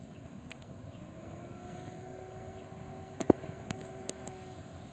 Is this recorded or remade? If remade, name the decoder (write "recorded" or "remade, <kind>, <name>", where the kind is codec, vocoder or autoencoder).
remade, codec, SNAC